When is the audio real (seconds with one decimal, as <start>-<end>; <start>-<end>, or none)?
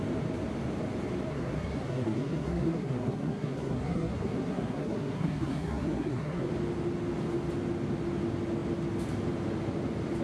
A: 0.0-1.3; 6.5-10.2